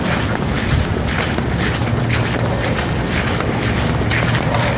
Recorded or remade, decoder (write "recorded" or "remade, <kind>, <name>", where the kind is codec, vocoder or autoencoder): recorded